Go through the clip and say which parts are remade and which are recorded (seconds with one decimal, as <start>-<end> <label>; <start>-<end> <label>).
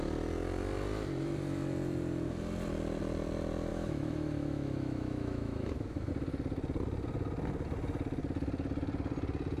0.0-3.7 recorded; 3.7-6.1 remade; 6.1-9.6 recorded